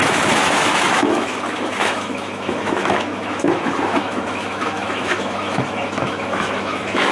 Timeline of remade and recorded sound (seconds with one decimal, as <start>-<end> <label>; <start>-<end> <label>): 0.0-7.1 remade